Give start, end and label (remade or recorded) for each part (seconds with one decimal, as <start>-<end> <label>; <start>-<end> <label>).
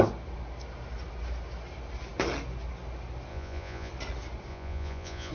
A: 0.0-3.3 recorded; 3.3-3.9 remade; 3.9-4.5 recorded; 4.5-5.3 remade